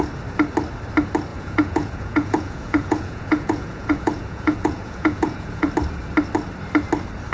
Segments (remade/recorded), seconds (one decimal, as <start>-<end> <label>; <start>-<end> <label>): 0.0-1.3 recorded; 1.3-5.7 remade; 5.7-7.3 recorded